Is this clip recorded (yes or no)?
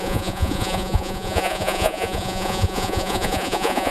no